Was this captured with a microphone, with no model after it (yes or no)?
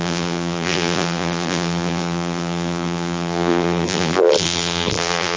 no